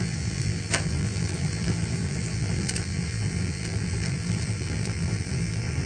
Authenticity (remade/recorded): remade